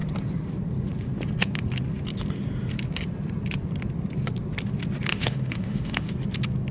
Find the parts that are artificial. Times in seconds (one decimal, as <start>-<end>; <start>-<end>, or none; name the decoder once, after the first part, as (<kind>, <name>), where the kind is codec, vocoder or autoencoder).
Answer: 5.1-6.1 (autoencoder, DAC-VAE)